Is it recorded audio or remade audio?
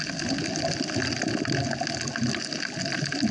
recorded